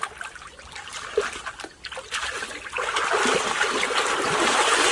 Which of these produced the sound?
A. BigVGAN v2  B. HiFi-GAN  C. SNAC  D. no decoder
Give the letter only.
D